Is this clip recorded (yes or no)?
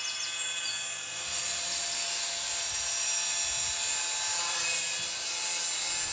yes